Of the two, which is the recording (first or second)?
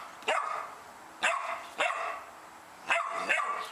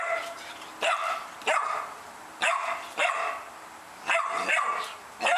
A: first